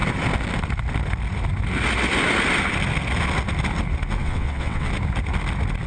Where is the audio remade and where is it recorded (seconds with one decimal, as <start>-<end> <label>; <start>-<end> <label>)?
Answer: 0.0-4.2 recorded; 4.2-4.9 remade; 4.9-5.9 recorded